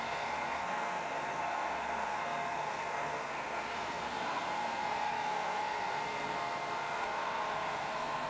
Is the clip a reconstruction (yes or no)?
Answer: yes